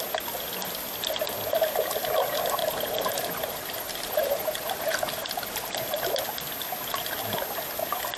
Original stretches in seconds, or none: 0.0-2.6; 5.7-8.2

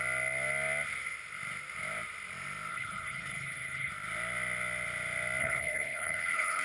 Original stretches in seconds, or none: 0.0-2.7; 3.9-5.4

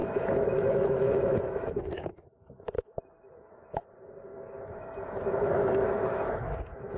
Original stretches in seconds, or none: 3.8-4.3

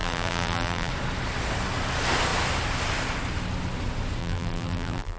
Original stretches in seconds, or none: 0.9-4.2

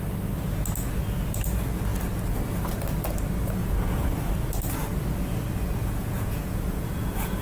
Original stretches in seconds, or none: 0.0-3.6; 4.1-5.8

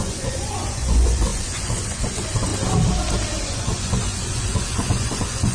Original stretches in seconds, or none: 2.5-3.4

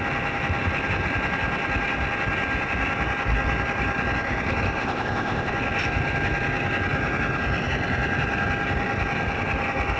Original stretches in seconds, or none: 0.0-4.8; 5.5-10.0

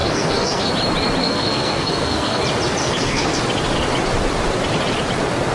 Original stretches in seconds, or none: 0.7-1.2; 2.4-2.8; 3.4-5.5